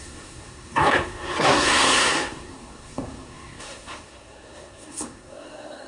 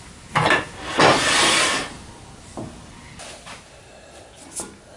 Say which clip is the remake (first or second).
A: first